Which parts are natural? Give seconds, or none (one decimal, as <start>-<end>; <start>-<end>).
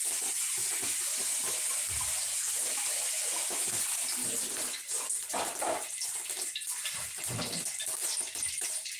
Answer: 0.0-2.3; 3.8-9.0